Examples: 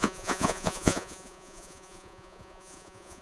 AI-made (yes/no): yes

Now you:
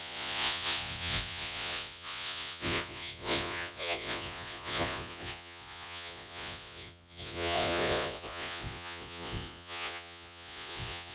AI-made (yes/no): yes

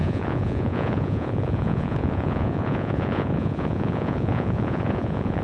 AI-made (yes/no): yes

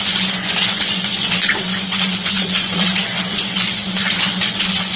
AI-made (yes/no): yes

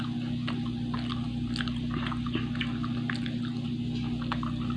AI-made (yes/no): no